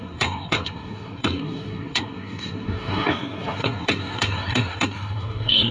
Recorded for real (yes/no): no